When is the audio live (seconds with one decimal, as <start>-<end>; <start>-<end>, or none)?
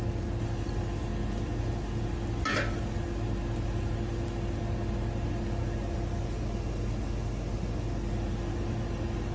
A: 0.0-9.3